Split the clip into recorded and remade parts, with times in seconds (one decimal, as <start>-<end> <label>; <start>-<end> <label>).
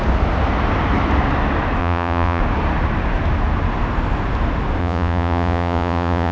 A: 0.0-1.8 recorded; 1.8-2.4 remade; 2.4-4.8 recorded; 4.8-6.3 remade